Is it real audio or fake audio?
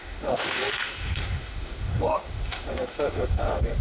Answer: fake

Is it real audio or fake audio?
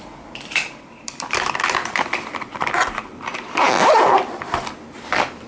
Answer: fake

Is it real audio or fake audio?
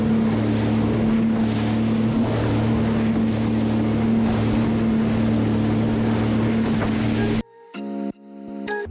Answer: real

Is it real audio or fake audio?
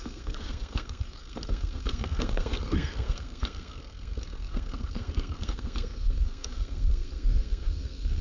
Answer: fake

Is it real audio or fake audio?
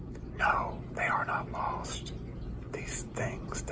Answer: real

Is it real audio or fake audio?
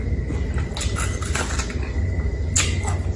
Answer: real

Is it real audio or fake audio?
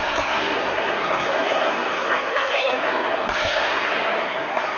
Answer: fake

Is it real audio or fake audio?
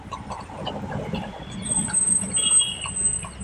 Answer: real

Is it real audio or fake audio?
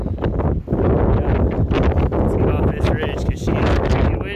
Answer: real